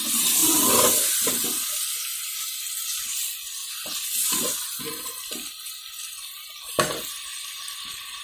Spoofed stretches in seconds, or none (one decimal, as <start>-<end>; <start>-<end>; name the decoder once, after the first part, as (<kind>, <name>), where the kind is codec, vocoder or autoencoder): 5.8-6.3 (vocoder, BigVGAN v2)